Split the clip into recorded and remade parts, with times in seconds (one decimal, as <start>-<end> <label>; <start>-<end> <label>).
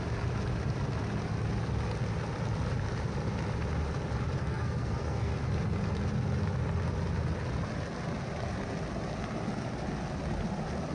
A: 0.0-4.4 recorded; 4.4-5.3 remade; 5.3-10.9 recorded